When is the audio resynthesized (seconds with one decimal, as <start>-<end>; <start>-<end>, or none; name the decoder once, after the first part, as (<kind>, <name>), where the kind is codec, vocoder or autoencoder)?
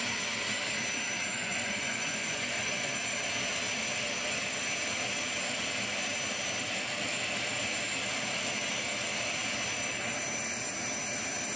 1.3-2.9 (vocoder, Vocos)